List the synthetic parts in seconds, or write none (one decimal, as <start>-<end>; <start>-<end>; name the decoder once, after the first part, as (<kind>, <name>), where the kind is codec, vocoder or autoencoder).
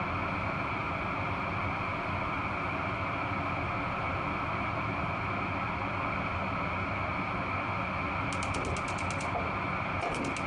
none